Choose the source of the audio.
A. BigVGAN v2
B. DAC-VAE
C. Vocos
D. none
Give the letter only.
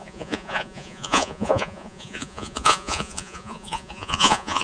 C